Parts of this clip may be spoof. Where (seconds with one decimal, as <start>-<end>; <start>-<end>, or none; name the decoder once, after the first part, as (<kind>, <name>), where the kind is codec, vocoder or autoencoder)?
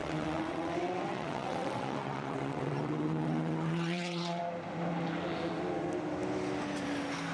0.0-4.4 (vocoder, WaveNeXt)